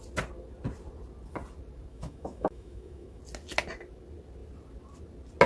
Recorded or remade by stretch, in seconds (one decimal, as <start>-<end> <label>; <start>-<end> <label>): 0.0-1.9 recorded; 1.9-3.2 remade; 3.2-5.5 recorded